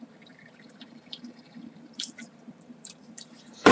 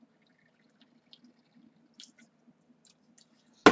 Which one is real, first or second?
second